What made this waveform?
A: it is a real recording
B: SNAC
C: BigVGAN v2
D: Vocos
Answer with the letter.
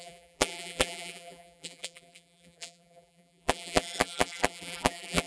C